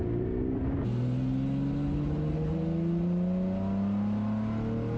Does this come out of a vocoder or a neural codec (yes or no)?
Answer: no